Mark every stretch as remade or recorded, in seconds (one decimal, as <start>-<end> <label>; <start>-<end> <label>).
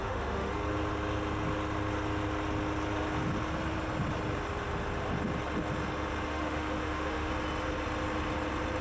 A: 0.0-0.5 remade; 0.5-6.3 recorded; 6.3-7.3 remade; 7.3-8.8 recorded